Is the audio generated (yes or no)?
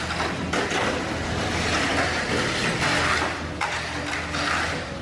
no